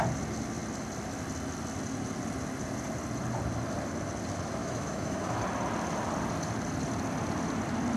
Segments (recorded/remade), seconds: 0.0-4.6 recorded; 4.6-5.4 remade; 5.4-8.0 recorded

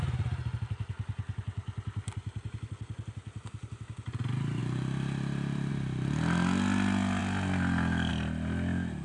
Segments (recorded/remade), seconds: 0.0-4.6 recorded; 4.6-5.7 remade; 5.7-9.0 recorded

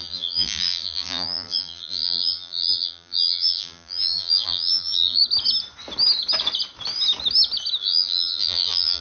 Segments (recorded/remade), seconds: 0.0-5.2 remade; 5.2-7.8 recorded; 7.8-9.0 remade

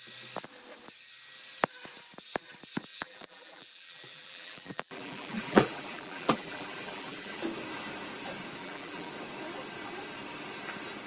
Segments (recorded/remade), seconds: 0.0-2.9 recorded; 2.9-7.4 remade; 7.4-8.6 recorded; 8.6-9.1 remade; 9.1-11.1 recorded